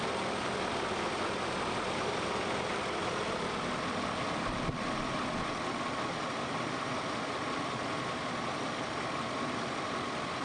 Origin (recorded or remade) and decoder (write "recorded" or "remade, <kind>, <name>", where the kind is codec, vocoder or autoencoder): recorded